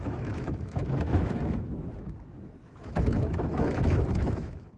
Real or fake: fake